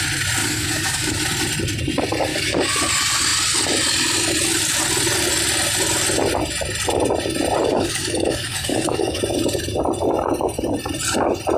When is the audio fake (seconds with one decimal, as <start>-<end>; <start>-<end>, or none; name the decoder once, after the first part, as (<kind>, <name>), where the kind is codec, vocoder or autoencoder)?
0.4-1.2 (codec, DAC); 2.3-2.9; 7.7-9.2